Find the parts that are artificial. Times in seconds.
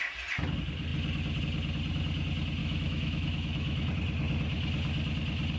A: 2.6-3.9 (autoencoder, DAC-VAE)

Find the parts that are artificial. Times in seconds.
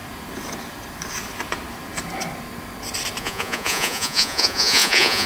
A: 3.2-5.3 (vocoder, Vocos)